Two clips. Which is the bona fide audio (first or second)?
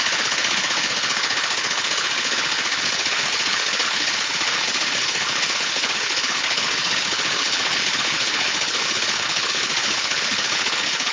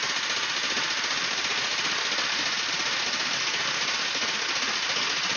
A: second